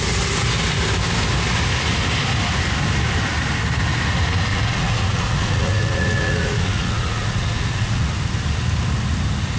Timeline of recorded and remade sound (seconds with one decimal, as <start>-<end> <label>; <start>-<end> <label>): 0.0-4.5 recorded; 4.5-8.1 remade; 8.1-9.6 recorded